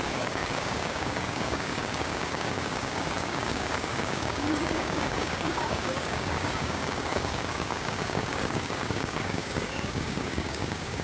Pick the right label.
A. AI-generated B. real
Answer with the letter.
A